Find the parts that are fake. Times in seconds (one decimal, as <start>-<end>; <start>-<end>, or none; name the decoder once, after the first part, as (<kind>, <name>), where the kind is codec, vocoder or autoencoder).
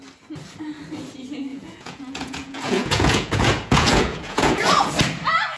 1.5-4.9 (vocoder, Vocos)